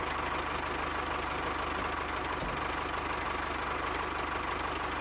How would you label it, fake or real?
real